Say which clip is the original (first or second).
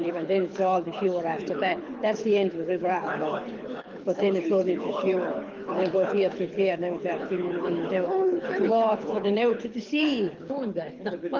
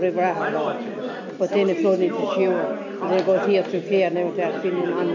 second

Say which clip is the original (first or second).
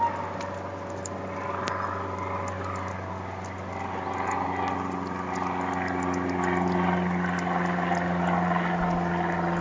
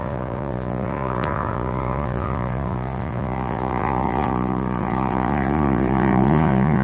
first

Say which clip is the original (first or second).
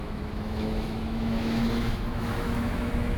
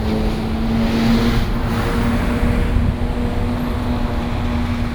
second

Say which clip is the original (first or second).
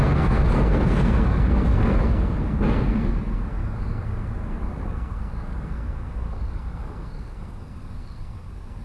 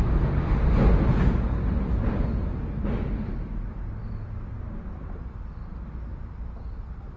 second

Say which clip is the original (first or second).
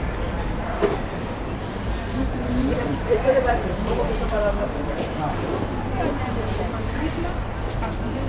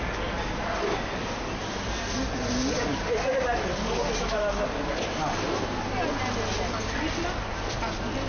second